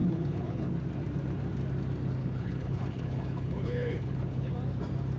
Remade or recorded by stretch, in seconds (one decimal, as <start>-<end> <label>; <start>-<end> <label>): 0.0-0.7 remade; 0.7-2.2 recorded; 2.2-4.5 remade; 4.5-5.2 recorded